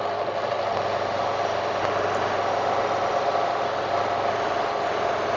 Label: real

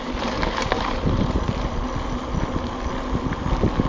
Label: real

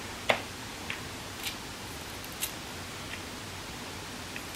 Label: real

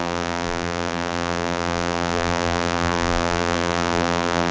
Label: fake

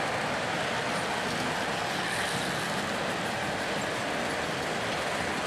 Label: real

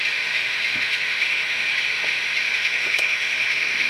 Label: fake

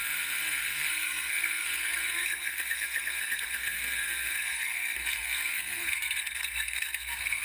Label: fake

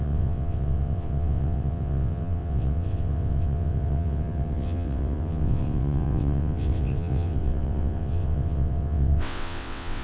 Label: fake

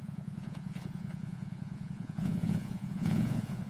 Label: fake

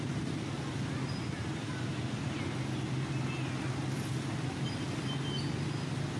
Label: real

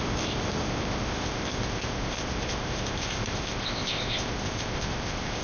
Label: fake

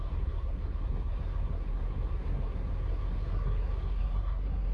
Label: fake